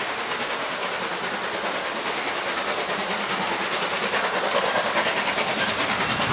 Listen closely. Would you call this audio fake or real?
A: real